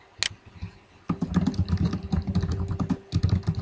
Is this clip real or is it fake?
real